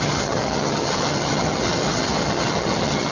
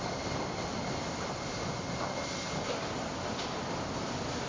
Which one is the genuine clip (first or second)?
second